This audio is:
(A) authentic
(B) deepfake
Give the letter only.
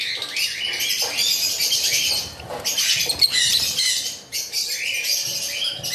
A